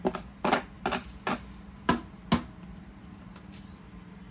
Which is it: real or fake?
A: real